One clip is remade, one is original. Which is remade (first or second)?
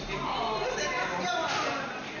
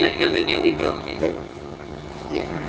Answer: second